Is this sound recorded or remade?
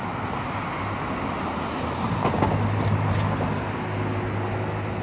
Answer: recorded